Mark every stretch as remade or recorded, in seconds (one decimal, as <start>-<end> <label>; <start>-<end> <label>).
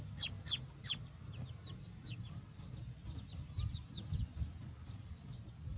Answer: 0.0-5.8 recorded